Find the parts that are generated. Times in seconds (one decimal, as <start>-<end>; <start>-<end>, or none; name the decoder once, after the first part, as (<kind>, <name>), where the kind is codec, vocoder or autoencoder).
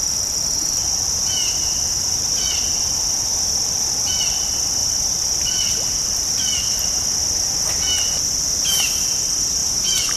4.8-6.9 (vocoder, BigVGAN v2); 9.6-10.2